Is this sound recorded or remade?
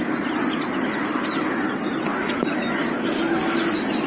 recorded